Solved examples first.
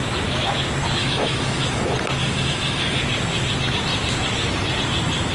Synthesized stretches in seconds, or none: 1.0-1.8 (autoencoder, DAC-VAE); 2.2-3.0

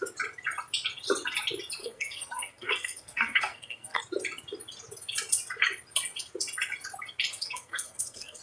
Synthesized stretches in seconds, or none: 1.8-4.0 (codec, SNAC); 7.3-8.4

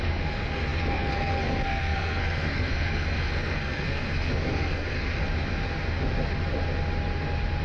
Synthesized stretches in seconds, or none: 0.0-5.2 (codec, SNAC)

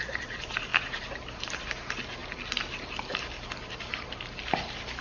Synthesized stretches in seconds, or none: 0.7-1.6 (vocoder, BigVGAN v2)